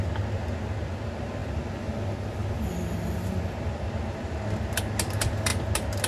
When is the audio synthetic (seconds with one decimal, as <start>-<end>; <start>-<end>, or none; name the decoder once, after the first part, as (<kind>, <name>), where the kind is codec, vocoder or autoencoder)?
none